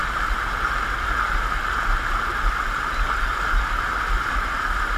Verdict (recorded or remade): recorded